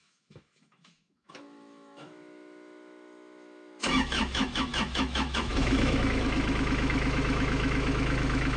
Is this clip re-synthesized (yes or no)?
yes